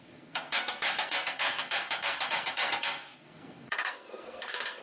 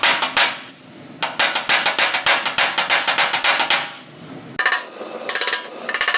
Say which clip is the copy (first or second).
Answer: first